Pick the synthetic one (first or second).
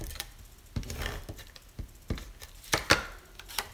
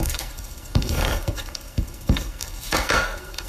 second